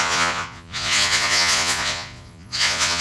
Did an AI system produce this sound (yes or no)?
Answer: yes